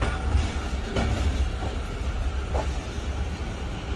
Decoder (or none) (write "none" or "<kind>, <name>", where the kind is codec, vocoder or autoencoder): none